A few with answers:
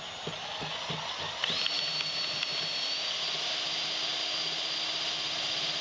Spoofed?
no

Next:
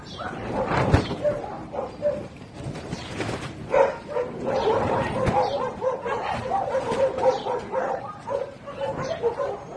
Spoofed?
yes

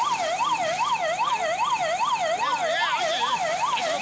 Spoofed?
no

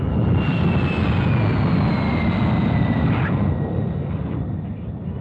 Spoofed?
no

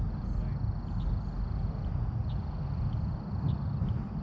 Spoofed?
no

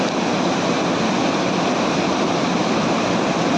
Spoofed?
no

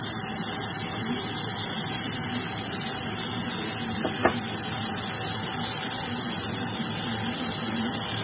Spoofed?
no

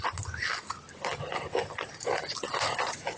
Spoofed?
no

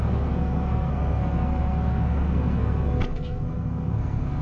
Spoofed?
yes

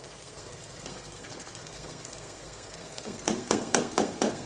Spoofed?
yes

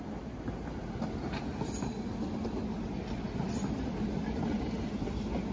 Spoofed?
no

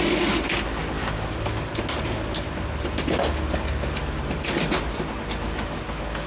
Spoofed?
no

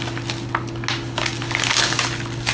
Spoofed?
no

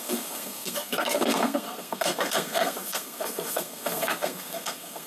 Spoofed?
yes